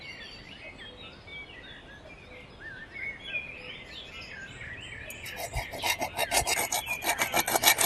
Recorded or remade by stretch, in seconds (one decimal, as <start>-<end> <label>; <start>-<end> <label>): 0.0-7.9 recorded